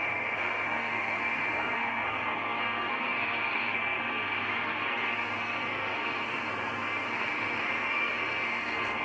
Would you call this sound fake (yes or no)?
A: yes